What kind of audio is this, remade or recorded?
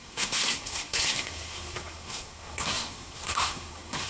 remade